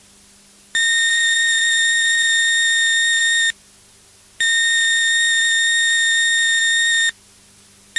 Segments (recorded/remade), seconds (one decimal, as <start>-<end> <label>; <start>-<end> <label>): 0.0-1.1 recorded; 1.1-2.4 remade; 2.4-8.0 recorded